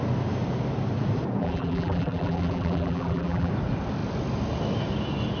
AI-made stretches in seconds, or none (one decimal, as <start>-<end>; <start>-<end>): 1.4-3.5